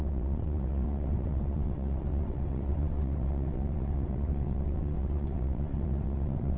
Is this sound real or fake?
fake